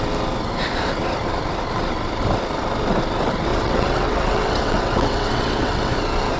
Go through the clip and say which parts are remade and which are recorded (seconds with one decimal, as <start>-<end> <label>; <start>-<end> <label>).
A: 0.0-3.5 recorded; 3.5-5.9 remade; 5.9-6.4 recorded